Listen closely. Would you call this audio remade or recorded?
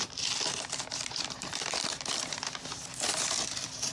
remade